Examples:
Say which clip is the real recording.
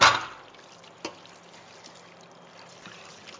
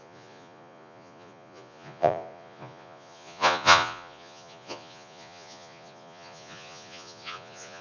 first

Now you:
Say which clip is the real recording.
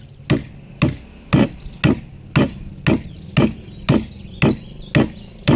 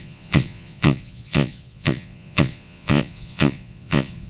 first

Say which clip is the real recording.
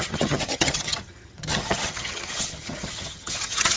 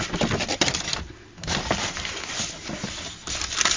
second